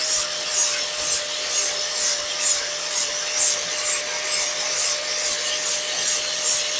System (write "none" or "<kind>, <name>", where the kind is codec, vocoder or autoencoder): none